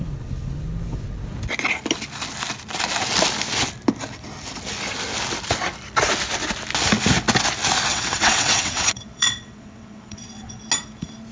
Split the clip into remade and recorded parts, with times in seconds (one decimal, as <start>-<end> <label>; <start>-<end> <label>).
0.0-7.9 recorded; 7.9-10.6 remade; 10.6-11.3 recorded

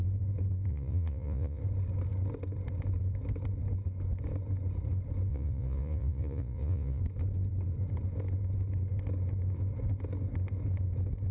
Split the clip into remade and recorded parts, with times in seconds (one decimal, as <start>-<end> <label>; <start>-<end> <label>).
0.0-0.7 recorded; 0.7-1.6 remade; 1.6-5.3 recorded; 5.3-7.0 remade; 7.0-11.3 recorded

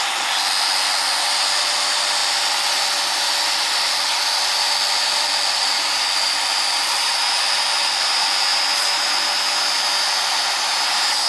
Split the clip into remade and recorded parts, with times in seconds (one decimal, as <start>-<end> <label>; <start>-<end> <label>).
0.0-11.3 recorded

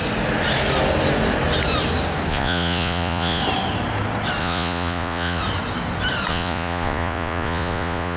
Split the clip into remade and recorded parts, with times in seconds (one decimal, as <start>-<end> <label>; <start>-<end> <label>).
0.0-2.3 recorded; 2.3-3.4 remade; 3.4-4.4 recorded; 4.4-5.4 remade; 5.4-6.3 recorded; 6.3-8.2 remade